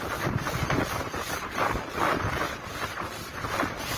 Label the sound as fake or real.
real